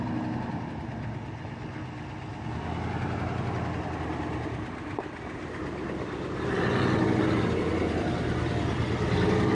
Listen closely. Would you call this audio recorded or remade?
recorded